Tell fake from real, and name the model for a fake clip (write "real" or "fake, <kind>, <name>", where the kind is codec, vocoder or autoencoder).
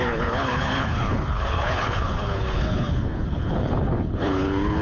fake, codec, HILCodec